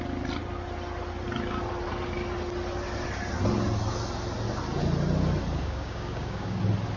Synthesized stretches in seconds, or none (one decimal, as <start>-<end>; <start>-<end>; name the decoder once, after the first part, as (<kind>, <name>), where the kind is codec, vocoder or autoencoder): 5.6-6.6 (codec, DAC)